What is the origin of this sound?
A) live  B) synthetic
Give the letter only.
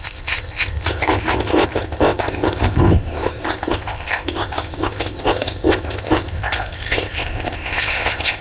B